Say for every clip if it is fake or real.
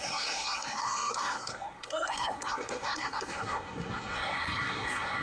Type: fake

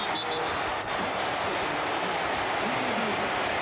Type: real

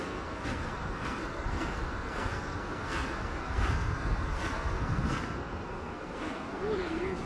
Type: fake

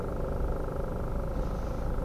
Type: real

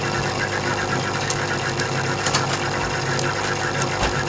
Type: real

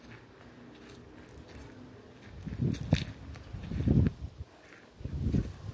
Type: real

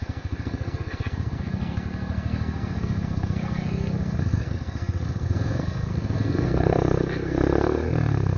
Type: fake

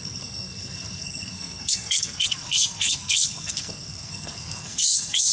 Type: fake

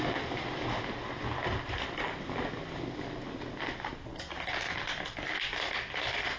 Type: real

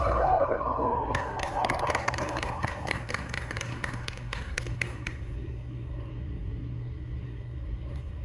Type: fake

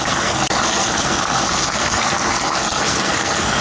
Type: fake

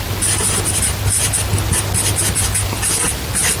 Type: real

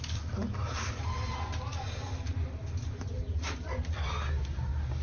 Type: real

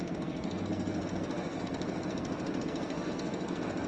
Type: fake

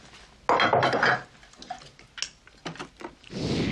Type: real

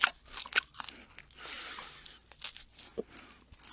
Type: real